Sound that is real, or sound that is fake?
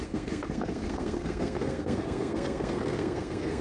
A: fake